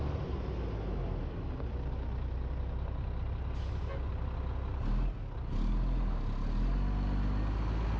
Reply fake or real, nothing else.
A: real